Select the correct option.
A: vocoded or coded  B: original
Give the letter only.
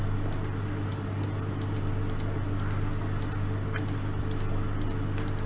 B